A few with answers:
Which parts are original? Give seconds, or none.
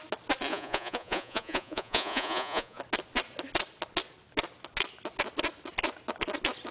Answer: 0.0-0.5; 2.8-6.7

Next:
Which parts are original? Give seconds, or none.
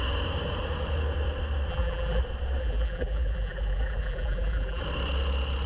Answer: 0.0-1.7; 2.2-2.6; 4.8-5.7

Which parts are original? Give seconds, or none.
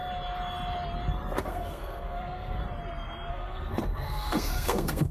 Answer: 0.0-1.4; 2.6-3.3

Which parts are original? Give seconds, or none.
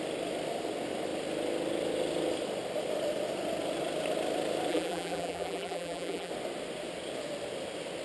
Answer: 0.0-4.7; 6.3-8.0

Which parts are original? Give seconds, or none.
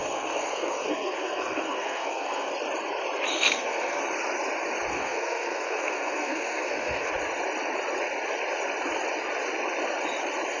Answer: 2.5-3.3; 4.0-4.9; 7.1-10.6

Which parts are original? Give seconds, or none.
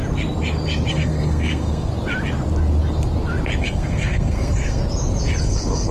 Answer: 0.0-0.9; 1.9-3.6; 4.8-5.4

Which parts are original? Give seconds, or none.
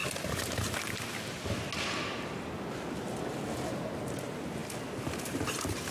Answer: 0.0-5.9